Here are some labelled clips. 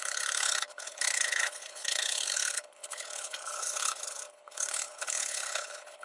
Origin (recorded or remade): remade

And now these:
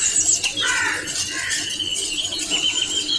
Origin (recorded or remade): recorded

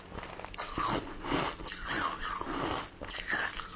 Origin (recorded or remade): recorded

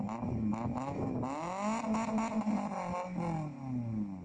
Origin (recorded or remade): recorded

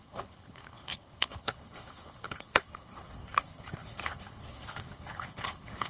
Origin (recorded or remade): remade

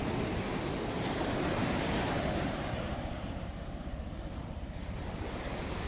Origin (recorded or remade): recorded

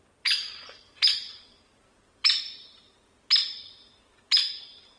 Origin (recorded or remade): recorded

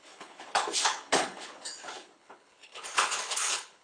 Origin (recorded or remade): remade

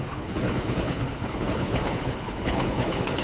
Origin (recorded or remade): remade